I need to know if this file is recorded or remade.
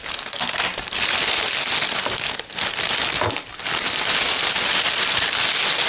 recorded